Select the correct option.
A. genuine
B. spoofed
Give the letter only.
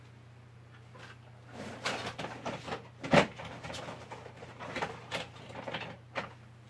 A